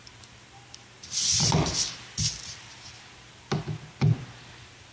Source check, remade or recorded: recorded